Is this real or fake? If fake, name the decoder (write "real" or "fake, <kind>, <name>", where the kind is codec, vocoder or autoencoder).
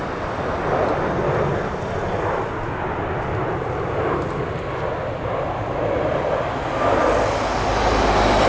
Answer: real